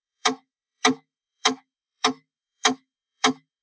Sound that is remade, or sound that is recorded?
remade